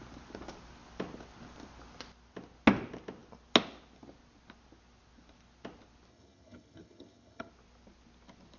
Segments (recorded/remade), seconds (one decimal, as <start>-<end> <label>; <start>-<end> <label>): 0.0-6.1 recorded; 6.1-7.5 remade; 7.5-8.6 recorded